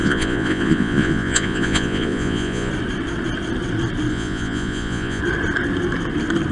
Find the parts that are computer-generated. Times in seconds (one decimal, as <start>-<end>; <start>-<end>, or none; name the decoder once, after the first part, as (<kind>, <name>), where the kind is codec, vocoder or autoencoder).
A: 0.0-2.7 (vocoder, Vocos); 4.1-5.2